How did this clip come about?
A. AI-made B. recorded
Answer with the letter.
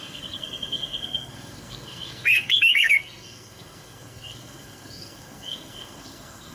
A